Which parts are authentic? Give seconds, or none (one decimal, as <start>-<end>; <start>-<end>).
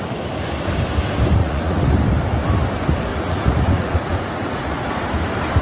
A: 0.0-1.4; 1.9-3.1; 4.9-5.6